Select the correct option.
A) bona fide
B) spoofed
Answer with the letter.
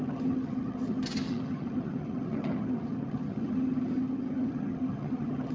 B